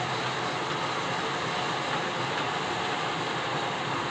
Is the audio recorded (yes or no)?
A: yes